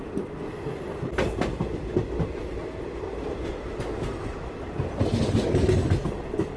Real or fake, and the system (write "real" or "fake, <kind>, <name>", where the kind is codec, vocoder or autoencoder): real